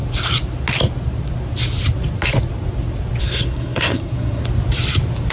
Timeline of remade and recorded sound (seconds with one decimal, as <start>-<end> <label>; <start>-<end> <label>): 0.0-3.2 recorded; 3.2-4.4 remade; 4.4-5.3 recorded